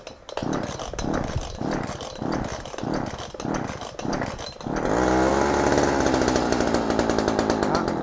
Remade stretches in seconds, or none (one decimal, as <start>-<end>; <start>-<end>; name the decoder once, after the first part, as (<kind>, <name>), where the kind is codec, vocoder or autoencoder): none